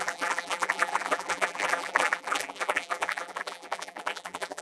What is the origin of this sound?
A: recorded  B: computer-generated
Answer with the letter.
B